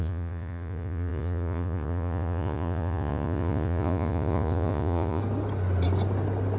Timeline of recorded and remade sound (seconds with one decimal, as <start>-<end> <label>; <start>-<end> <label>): 0.0-5.2 remade; 5.2-6.6 recorded